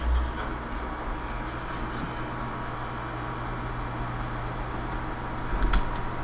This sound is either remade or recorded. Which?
recorded